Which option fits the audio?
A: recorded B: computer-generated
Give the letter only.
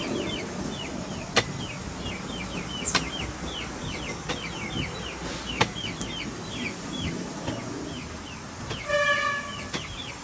A